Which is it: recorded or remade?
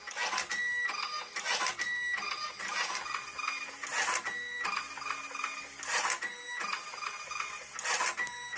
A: recorded